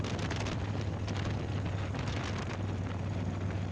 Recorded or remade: recorded